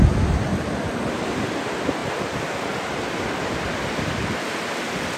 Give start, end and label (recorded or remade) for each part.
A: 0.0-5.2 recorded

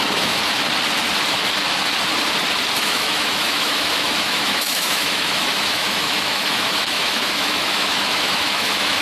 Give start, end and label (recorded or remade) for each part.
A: 0.0-0.4 remade; 0.4-2.8 recorded; 2.8-9.0 remade

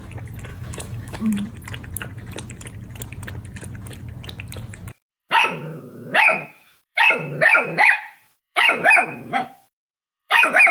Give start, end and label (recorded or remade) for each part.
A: 0.0-0.5 recorded; 0.5-1.3 remade; 1.3-5.1 recorded; 5.1-10.7 remade

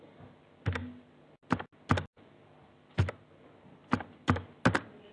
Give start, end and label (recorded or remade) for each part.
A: 0.0-5.1 recorded

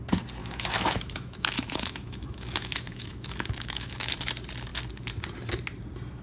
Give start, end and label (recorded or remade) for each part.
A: 0.0-0.4 recorded; 0.4-4.1 remade; 4.1-6.2 recorded